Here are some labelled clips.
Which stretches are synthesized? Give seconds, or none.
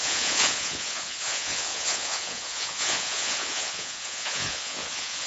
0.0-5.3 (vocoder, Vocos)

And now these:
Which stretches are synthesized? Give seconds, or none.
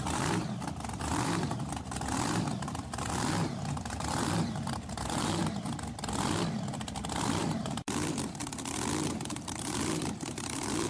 0.0-5.4 (vocoder, BigVGAN v2); 7.4-8.4; 9.1-10.9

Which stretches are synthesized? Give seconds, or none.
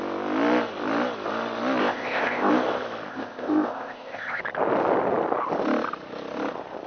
1.8-2.5 (codec, ZipCodec); 3.1-4.4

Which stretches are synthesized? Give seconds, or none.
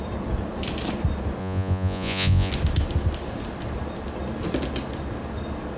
1.4-2.5 (vocoder, Vocos)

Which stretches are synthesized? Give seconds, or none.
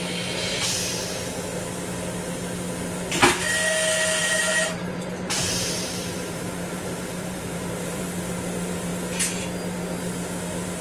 4.2-8.1 (vocoder, BigVGAN v2)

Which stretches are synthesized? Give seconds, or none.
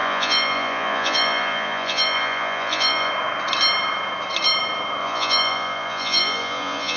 0.0-3.1 (vocoder, Vocos); 5.0-7.0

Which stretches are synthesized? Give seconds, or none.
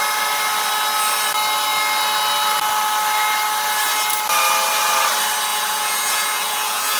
5.5-7.0 (vocoder, Vocos)